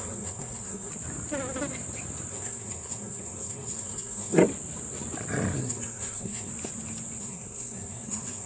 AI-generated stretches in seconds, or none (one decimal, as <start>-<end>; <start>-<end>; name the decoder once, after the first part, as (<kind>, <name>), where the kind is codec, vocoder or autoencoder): 0.0-0.9 (codec, SNAC); 2.3-4.4; 5.6-6.5; 7.2-8.5